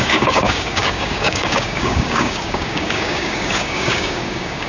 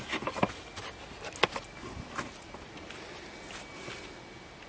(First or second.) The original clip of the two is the second